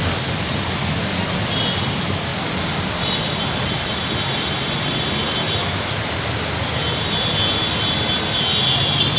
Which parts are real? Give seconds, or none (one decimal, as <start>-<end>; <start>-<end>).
0.0-9.2